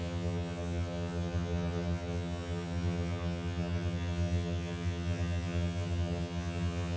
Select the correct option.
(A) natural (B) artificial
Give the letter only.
B